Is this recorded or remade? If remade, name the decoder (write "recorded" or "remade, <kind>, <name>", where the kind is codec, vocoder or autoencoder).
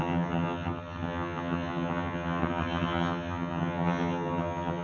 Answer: remade, vocoder, HiFi-GAN